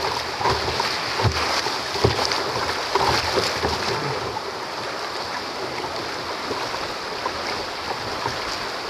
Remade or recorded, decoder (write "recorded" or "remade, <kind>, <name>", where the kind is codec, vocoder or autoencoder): recorded